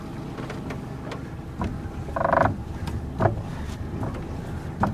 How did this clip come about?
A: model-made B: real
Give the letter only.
B